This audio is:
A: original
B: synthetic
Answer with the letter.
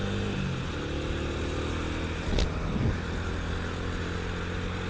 A